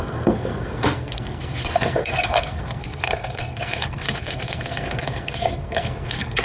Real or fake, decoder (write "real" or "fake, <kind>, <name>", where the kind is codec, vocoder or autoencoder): fake, codec, SNAC